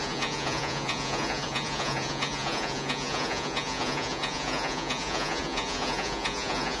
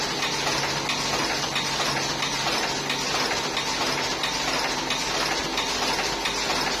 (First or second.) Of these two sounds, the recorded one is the second